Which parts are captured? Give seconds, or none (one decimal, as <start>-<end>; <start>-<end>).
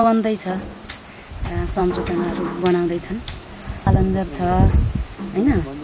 0.0-1.8; 3.5-5.8